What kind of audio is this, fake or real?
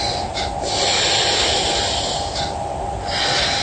real